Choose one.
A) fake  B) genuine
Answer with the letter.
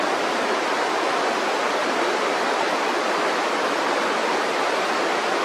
B